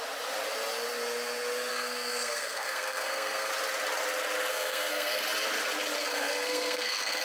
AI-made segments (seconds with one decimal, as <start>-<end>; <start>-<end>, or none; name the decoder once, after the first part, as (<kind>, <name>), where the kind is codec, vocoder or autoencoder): 1.7-3.5 (codec, SNAC); 4.5-5.2; 6.0-7.2